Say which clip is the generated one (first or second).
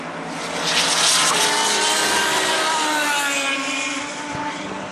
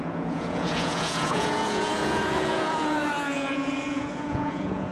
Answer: second